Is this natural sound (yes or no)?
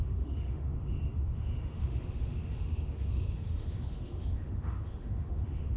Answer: no